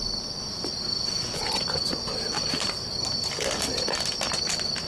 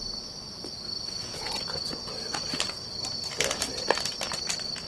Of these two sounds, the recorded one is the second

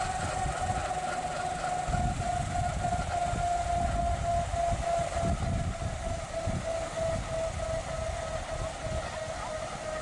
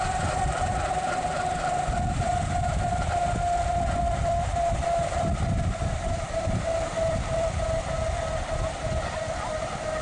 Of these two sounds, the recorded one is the first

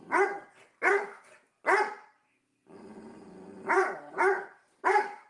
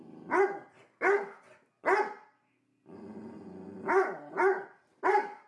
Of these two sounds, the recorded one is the second